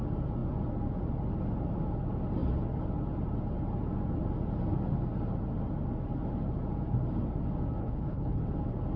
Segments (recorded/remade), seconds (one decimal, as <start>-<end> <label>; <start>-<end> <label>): 0.0-7.8 recorded; 7.8-8.4 remade; 8.4-9.0 recorded